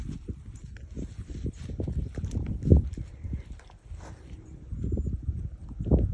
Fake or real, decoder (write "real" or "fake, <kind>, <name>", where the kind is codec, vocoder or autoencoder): real